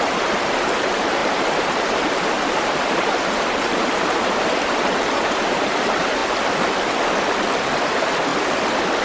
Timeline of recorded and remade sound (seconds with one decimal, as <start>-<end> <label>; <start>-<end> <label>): 0.0-6.2 remade; 6.2-7.8 recorded; 7.8-8.3 remade; 8.3-9.0 recorded